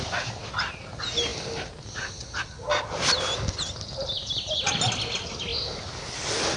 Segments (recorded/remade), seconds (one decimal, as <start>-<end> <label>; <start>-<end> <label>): 0.0-6.6 recorded